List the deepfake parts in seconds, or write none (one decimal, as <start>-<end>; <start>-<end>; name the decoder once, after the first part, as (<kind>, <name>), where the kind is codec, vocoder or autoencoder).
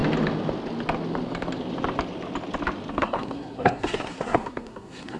2.9-5.2 (codec, SNAC)